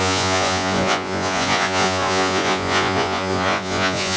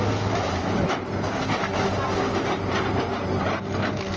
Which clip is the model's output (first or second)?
first